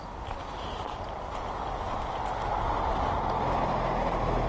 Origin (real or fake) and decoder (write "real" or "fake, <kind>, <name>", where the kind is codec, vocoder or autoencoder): real